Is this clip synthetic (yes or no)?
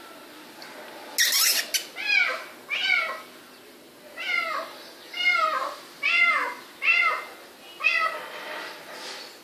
no